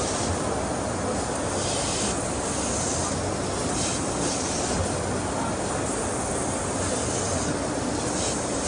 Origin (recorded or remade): recorded